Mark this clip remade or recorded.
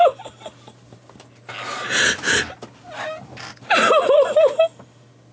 recorded